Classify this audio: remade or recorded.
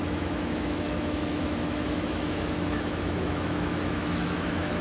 remade